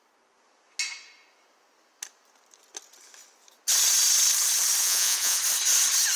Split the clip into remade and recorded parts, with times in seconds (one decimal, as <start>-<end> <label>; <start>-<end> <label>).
0.0-4.8 recorded; 4.8-5.4 remade; 5.4-6.2 recorded